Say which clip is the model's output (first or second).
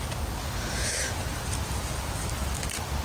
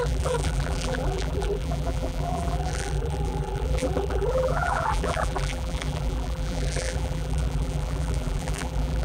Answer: second